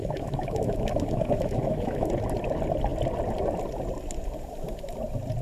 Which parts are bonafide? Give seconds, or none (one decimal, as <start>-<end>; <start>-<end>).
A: 2.1-5.4